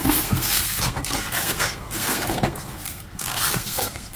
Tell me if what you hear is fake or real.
fake